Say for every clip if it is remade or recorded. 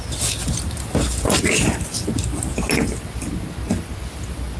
recorded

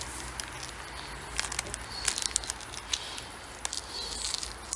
recorded